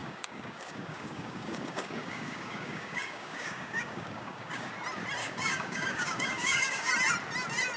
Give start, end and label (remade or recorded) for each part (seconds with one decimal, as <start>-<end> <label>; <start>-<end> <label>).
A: 0.0-4.7 remade; 4.7-5.2 recorded; 5.2-6.9 remade; 6.9-7.8 recorded